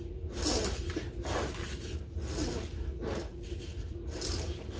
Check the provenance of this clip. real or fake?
real